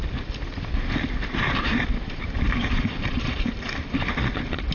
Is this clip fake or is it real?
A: fake